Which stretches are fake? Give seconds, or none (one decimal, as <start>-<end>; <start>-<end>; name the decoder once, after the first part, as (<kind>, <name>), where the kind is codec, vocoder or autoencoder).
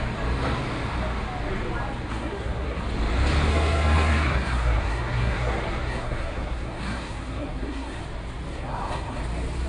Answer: 2.1-2.8 (codec, SNAC); 3.5-8.0; 8.5-9.2